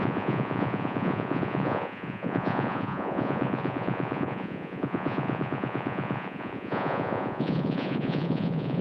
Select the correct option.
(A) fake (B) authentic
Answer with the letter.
A